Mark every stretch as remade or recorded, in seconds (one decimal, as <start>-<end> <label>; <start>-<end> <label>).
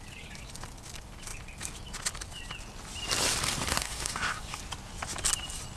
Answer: 0.0-3.7 recorded; 3.7-4.6 remade; 4.6-5.8 recorded